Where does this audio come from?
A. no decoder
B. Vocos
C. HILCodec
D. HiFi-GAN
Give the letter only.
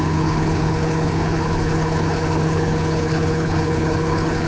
C